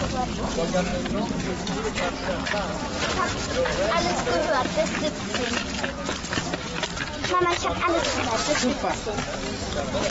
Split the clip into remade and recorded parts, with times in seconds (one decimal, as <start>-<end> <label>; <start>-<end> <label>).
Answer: 0.0-0.9 recorded; 0.9-1.6 remade; 1.6-4.4 recorded; 4.4-5.2 remade; 5.2-10.1 recorded